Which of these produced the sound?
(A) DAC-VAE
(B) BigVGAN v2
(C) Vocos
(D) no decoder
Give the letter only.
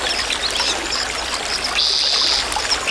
D